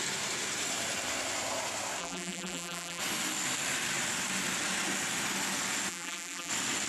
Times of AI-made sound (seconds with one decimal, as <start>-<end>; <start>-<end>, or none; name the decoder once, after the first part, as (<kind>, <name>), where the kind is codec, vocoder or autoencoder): 2.0-3.0 (vocoder, BigVGAN v2); 5.9-6.5